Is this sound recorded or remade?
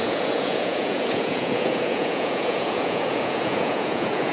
remade